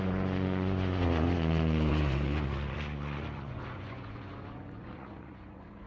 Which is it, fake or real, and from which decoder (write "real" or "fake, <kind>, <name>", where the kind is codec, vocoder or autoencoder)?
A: fake, vocoder, Vocos